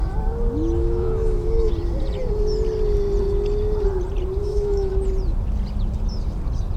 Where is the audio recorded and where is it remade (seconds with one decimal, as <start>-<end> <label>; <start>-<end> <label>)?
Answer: 0.0-0.8 recorded; 0.8-1.7 remade; 1.7-4.4 recorded; 4.4-4.9 remade; 4.9-6.8 recorded